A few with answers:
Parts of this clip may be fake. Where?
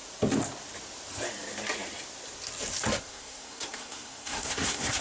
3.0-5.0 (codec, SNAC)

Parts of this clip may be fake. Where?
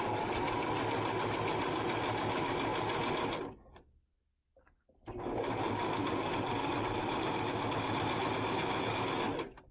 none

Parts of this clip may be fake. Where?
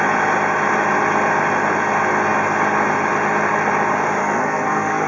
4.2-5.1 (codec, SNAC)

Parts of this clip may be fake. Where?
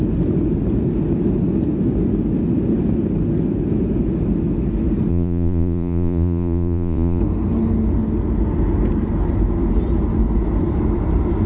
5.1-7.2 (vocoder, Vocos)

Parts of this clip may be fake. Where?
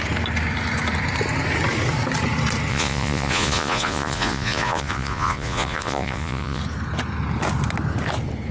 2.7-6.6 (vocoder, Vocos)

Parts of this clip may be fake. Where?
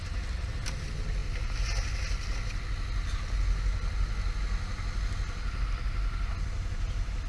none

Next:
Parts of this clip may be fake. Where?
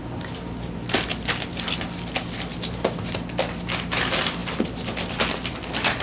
none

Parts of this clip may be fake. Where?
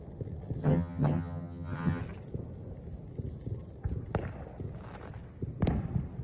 0.6-2.0 (vocoder, HiFi-GAN)